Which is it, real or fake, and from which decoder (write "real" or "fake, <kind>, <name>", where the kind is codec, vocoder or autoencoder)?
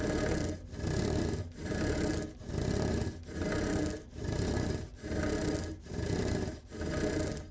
real